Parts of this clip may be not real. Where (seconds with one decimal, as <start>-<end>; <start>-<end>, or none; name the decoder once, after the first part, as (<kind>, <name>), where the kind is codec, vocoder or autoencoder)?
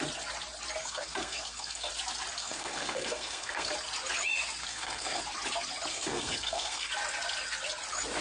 0.8-1.9 (codec, SNAC); 2.4-3.7; 4.6-5.2; 5.9-6.9